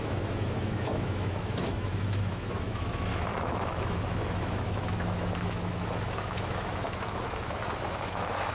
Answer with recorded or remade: remade